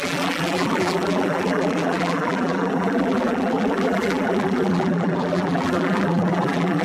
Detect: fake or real fake